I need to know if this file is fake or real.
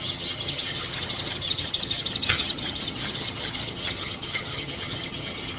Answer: fake